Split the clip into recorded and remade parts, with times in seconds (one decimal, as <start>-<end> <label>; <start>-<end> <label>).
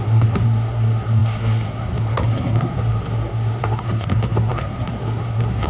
0.0-5.7 remade